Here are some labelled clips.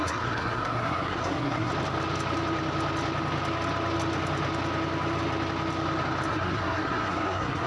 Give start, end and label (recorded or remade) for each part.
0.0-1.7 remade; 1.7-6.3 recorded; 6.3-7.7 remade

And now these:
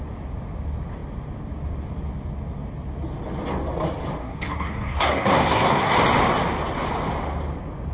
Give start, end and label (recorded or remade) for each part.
0.0-4.2 recorded; 4.2-5.9 remade; 5.9-7.9 recorded

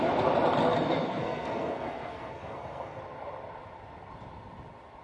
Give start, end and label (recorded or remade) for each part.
0.0-1.0 recorded; 1.0-3.0 remade; 3.0-5.0 recorded

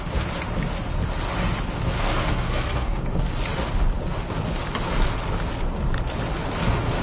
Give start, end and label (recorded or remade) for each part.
0.0-1.9 recorded; 1.9-3.0 remade; 3.0-7.0 recorded

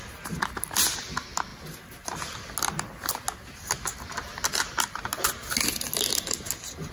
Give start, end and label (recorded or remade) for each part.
0.0-6.9 recorded

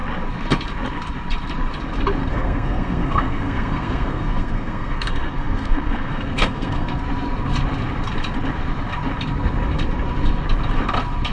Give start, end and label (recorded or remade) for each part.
0.0-2.2 recorded; 2.2-7.0 remade; 7.0-11.3 recorded

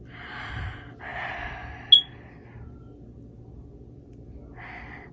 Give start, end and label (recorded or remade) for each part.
0.0-5.1 recorded